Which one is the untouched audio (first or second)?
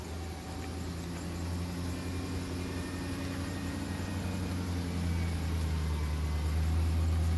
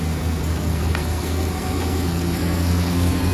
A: first